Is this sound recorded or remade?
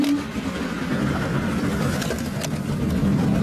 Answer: recorded